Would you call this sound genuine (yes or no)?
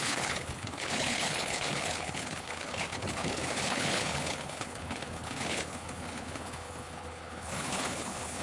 no